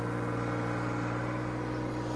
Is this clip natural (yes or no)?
yes